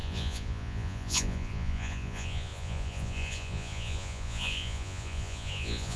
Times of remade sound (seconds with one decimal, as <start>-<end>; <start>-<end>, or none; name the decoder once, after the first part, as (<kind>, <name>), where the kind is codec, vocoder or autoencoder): 0.0-6.0 (vocoder, Vocos)